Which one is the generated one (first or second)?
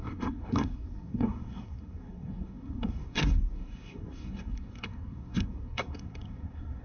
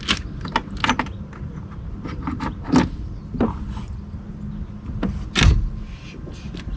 first